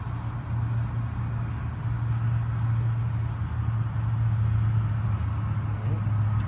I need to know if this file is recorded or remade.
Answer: recorded